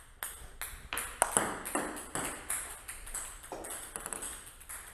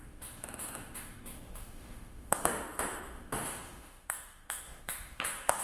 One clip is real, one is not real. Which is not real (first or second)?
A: second